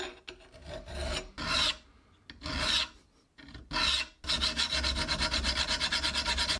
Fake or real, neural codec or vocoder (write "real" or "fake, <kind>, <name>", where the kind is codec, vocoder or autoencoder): real